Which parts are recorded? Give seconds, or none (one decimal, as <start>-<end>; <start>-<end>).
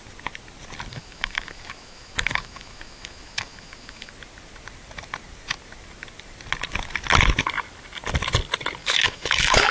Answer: 0.0-0.9; 4.1-8.8